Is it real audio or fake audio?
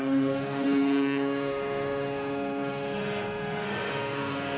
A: fake